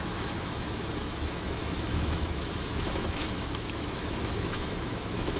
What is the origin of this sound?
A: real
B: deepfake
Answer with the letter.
B